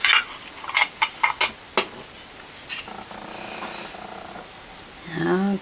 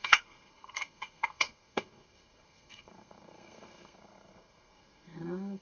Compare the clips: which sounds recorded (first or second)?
first